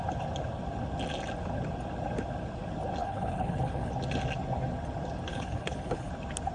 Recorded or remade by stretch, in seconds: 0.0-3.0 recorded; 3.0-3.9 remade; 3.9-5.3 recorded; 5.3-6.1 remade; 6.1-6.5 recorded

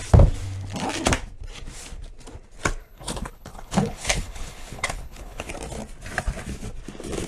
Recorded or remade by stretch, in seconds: 0.0-2.8 recorded; 2.8-5.5 remade; 5.5-7.3 recorded

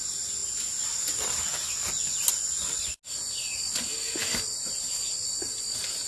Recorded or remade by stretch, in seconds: 0.0-6.1 recorded

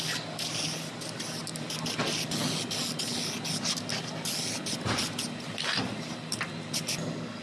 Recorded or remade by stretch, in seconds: 0.0-7.4 recorded

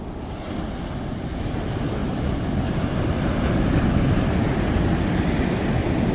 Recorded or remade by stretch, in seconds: 0.0-6.1 recorded

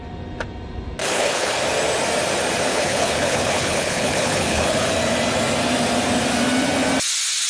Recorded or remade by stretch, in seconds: 0.0-1.0 recorded; 1.0-1.6 remade; 1.6-2.7 recorded; 2.7-4.9 remade; 4.9-7.5 recorded

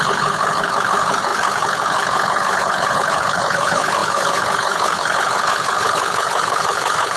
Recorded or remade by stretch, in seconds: 0.0-7.2 remade